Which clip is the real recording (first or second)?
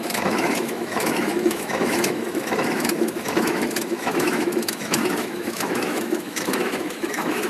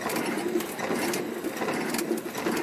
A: second